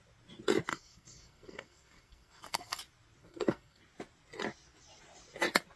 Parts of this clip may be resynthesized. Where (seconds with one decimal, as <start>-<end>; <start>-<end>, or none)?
0.7-2.8; 3.2-3.8